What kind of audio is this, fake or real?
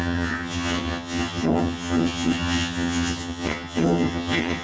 fake